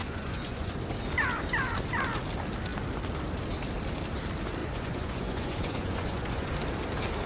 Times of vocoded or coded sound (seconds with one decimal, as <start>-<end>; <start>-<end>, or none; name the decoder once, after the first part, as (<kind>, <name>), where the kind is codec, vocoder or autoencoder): 0.0-0.7 (vocoder, Vocos); 4.6-6.5